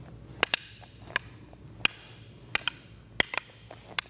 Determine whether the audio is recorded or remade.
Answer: recorded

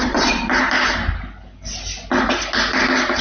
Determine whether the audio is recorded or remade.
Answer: recorded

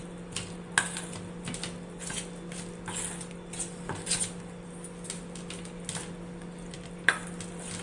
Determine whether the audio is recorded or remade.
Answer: recorded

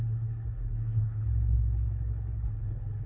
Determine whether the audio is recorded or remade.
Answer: remade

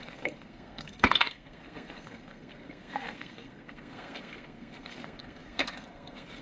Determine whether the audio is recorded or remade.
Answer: remade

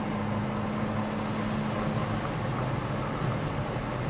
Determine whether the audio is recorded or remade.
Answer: recorded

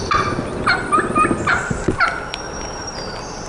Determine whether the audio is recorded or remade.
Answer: recorded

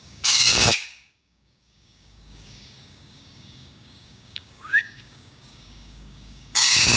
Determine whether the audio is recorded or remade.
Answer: remade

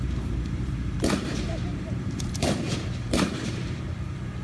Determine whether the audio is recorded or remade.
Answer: remade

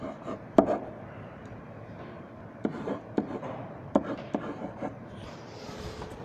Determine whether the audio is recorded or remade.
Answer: remade